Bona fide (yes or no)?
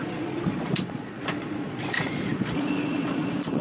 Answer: no